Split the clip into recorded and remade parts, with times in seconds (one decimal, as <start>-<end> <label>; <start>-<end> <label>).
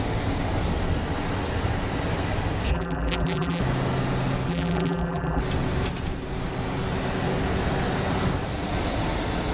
0.0-2.7 recorded; 2.7-3.6 remade; 3.6-4.5 recorded; 4.5-5.4 remade; 5.4-9.5 recorded